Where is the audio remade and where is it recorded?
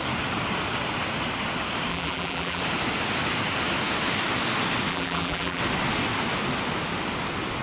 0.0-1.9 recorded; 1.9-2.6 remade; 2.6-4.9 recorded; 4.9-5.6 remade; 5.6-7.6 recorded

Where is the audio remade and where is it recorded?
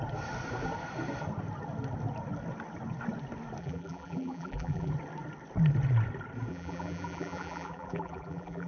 0.0-3.6 recorded; 3.6-4.9 remade; 4.9-6.5 recorded; 6.5-8.7 remade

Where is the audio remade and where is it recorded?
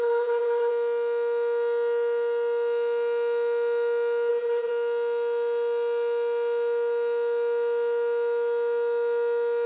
0.0-0.7 remade; 0.7-4.3 recorded; 4.3-4.7 remade; 4.7-9.7 recorded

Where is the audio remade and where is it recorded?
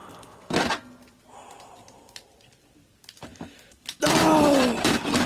0.0-5.3 remade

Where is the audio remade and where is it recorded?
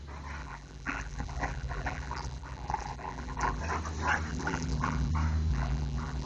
0.0-0.4 recorded; 0.4-3.6 remade; 3.6-4.3 recorded; 4.3-5.1 remade; 5.1-5.5 recorded; 5.5-6.3 remade